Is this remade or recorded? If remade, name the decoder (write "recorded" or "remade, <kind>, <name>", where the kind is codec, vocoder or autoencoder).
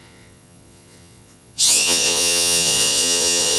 remade, vocoder, Vocos